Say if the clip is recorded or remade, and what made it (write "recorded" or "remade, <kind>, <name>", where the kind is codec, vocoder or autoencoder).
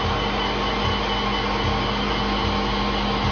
recorded